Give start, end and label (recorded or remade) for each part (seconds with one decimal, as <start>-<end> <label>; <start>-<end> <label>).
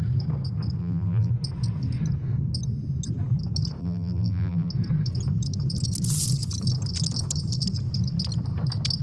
0.0-0.8 recorded; 0.8-1.3 remade; 1.3-3.8 recorded; 3.8-4.7 remade; 4.7-9.0 recorded